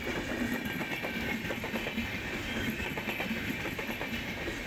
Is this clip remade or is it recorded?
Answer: recorded